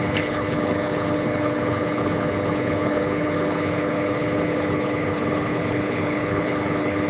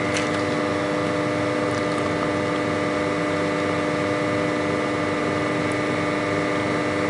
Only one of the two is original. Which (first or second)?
second